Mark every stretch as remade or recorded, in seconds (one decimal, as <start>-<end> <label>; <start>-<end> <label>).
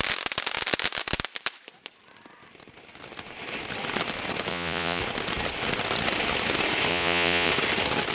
0.0-4.5 recorded; 4.5-5.0 remade; 5.0-6.9 recorded; 6.9-7.5 remade; 7.5-8.1 recorded